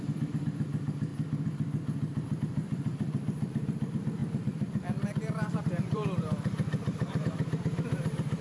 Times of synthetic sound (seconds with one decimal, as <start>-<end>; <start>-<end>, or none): 0.0-1.1; 2.4-8.4